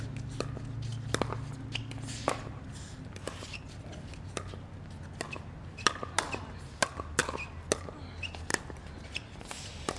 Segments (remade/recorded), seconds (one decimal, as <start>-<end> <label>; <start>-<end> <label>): 0.0-8.5 recorded; 8.5-9.4 remade; 9.4-10.0 recorded